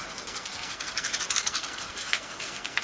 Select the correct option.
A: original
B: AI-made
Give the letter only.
B